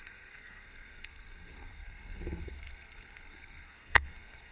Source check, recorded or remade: remade